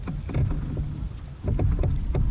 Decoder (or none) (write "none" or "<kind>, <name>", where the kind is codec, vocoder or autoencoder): none